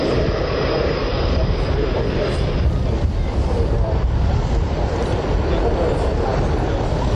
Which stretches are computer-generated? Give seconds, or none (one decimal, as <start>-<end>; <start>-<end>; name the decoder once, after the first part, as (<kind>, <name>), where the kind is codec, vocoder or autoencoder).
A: 1.0-5.3 (vocoder, BigVGAN v2)